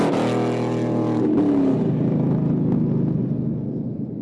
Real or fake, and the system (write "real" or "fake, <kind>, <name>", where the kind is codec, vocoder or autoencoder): real